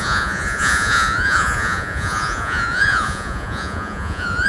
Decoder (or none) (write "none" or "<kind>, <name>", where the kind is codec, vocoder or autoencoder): vocoder, Vocos